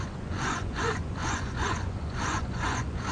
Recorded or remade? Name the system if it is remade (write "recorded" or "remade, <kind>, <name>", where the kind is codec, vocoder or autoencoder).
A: remade, vocoder, Vocos